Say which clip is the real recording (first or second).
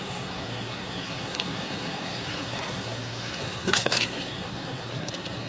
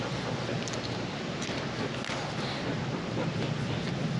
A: second